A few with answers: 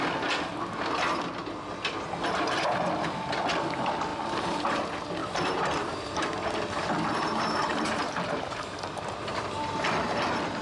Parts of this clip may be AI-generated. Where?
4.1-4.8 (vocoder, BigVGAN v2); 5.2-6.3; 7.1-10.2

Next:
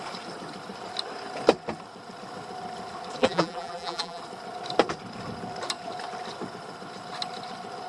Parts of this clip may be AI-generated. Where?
3.2-4.2 (vocoder, BigVGAN v2)

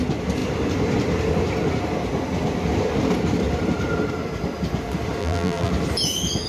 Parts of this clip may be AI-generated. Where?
5.2-5.7 (vocoder, BigVGAN v2)

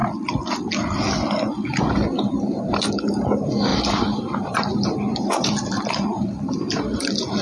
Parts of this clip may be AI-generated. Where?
1.8-7.4 (vocoder, BigVGAN v2)

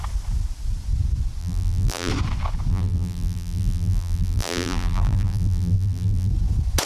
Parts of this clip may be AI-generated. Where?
1.4-2.1 (vocoder, BigVGAN v2); 2.7-6.3